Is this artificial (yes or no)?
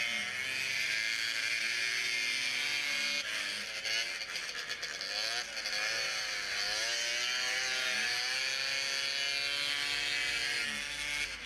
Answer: no